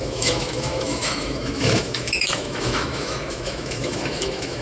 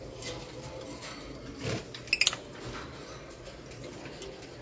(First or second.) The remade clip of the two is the first